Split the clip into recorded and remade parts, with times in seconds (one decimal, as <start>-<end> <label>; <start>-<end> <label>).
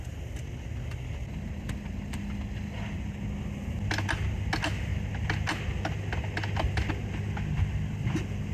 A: 0.0-8.5 recorded